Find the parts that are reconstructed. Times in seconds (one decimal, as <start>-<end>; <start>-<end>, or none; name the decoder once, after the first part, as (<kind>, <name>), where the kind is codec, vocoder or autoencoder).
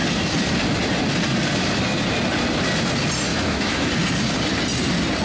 3.3-3.9 (autoencoder, DAC-VAE)